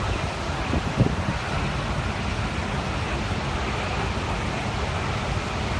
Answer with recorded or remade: recorded